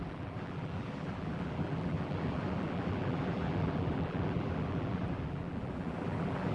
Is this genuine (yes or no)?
no